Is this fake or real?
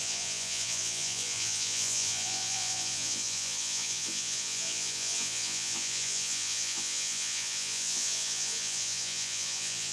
fake